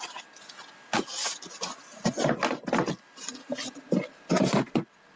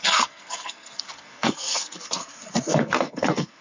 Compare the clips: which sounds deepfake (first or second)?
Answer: second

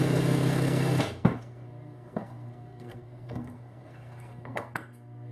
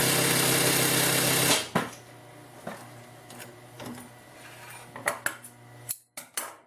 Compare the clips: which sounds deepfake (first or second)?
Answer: first